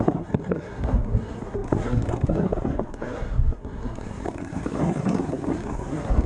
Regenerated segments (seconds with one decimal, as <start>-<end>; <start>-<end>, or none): 0.0-6.3